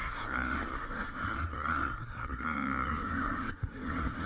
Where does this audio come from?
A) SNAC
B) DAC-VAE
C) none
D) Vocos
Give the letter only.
A